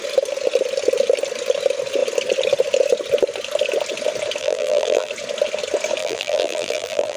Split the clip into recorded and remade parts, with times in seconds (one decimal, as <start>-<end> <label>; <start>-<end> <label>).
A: 0.0-4.4 recorded; 4.4-5.1 remade; 5.1-6.0 recorded; 6.0-7.2 remade